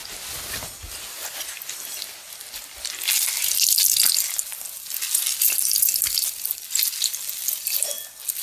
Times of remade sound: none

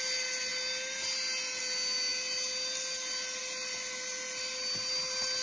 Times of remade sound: none

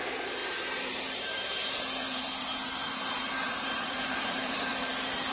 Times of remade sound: 0.0-5.3 (vocoder, BigVGAN v2)